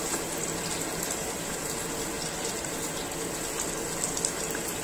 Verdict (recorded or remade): recorded